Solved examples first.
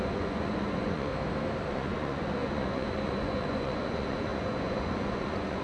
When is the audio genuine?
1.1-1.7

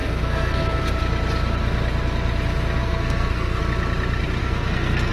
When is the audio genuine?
0.9-2.8; 3.6-4.4

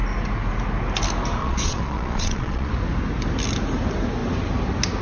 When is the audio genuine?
0.0-1.4; 2.7-5.0

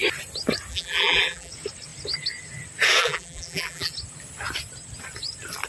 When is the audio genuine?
0.0-0.7; 1.5-3.0; 3.9-5.7